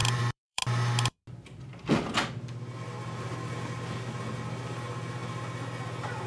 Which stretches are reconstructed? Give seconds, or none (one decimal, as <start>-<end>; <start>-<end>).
0.0-0.6